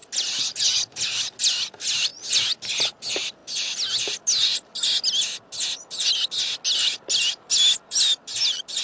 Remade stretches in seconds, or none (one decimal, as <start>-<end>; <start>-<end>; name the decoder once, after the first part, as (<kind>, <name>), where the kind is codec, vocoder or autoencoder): none